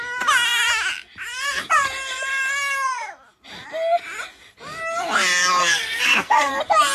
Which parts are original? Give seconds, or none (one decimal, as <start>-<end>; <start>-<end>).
0.0-5.6; 6.5-6.9

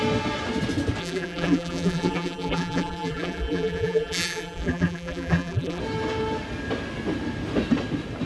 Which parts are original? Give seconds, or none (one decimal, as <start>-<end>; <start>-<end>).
0.0-1.0; 5.8-8.3

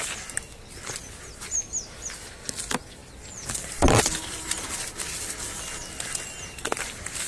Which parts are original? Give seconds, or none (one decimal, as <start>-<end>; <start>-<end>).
0.0-7.3

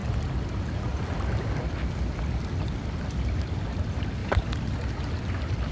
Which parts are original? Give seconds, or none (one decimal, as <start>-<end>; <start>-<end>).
0.0-4.2; 4.7-5.7